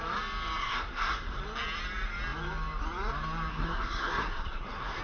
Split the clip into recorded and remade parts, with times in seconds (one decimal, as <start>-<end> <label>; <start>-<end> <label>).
0.0-0.6 recorded; 0.6-1.4 remade; 1.4-3.5 recorded; 3.5-5.0 remade